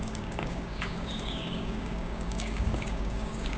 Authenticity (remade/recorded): remade